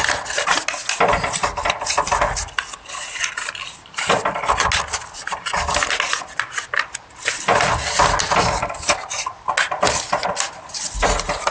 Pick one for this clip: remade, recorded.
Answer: recorded